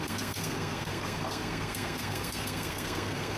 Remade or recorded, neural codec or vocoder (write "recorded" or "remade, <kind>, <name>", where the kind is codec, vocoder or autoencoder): remade, codec, SNAC